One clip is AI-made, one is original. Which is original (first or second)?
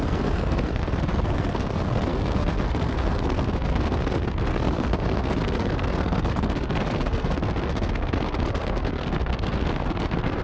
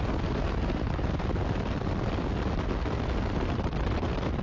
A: second